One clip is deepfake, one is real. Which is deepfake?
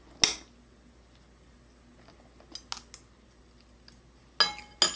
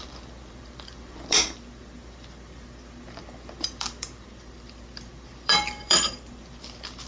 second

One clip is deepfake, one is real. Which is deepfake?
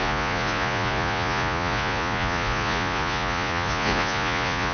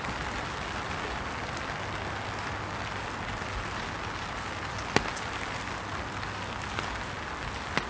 first